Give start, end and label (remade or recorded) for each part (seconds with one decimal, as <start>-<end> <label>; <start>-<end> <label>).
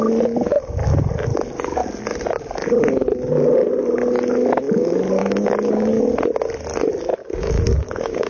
0.0-5.2 recorded; 5.2-5.9 remade; 5.9-7.2 recorded; 7.2-8.3 remade